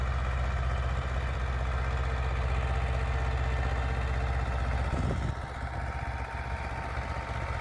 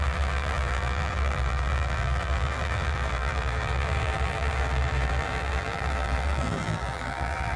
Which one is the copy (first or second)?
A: second